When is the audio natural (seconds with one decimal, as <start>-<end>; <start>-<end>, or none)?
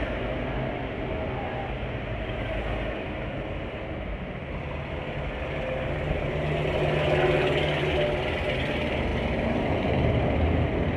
0.0-11.0